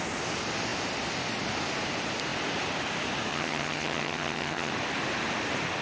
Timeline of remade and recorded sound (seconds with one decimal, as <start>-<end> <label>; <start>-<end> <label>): 0.0-3.3 recorded; 3.3-4.7 remade; 4.7-5.8 recorded